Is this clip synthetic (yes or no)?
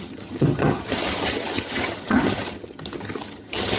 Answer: yes